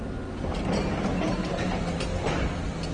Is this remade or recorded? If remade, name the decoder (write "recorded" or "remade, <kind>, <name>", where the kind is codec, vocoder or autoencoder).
recorded